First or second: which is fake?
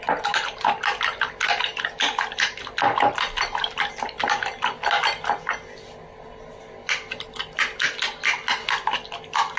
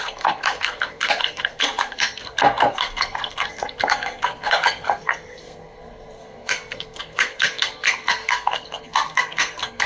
second